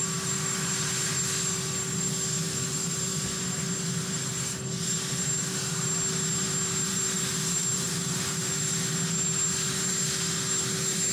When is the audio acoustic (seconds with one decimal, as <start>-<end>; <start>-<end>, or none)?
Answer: 0.0-7.6; 8.6-11.1